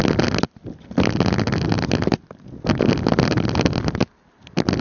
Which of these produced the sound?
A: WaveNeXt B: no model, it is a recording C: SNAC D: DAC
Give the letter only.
B